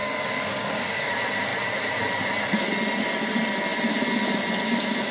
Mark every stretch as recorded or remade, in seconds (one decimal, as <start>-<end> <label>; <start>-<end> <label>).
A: 0.0-1.1 remade; 1.1-5.1 recorded